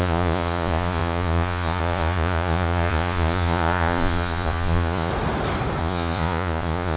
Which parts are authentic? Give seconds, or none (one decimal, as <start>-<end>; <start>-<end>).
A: 5.1-5.8